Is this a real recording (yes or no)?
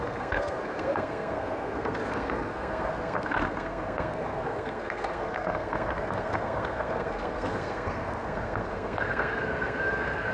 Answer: no